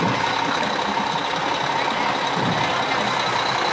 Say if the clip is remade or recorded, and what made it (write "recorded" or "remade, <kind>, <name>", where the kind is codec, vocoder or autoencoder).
recorded